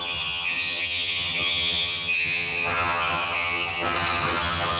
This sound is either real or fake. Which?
fake